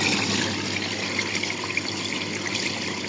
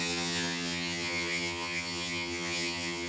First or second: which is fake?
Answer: second